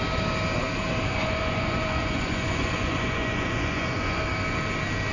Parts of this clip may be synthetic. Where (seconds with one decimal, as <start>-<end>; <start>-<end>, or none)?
1.1-4.2